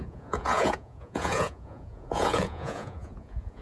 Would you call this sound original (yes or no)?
no